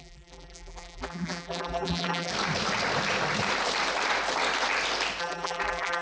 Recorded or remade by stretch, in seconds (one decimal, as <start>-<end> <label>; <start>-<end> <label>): 0.0-2.3 remade; 2.3-5.2 recorded; 5.2-6.0 remade